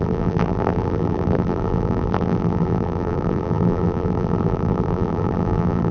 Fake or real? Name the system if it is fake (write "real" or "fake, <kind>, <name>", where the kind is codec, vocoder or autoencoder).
fake, vocoder, BigVGAN v2